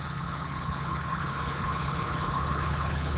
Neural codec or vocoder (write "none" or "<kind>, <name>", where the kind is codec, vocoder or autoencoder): codec, HILCodec